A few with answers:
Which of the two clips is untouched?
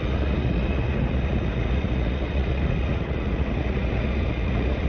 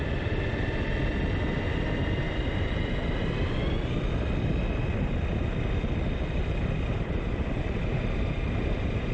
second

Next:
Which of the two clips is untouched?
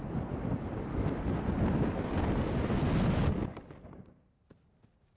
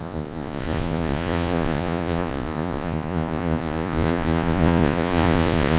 first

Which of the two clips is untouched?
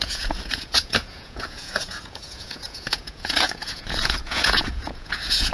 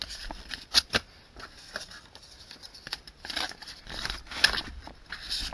second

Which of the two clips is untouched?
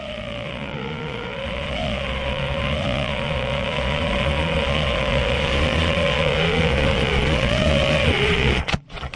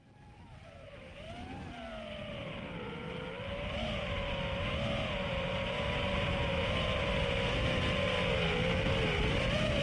second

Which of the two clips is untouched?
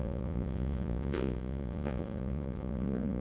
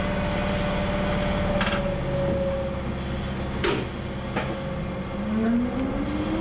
second